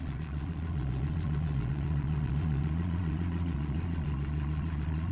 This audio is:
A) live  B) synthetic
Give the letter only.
B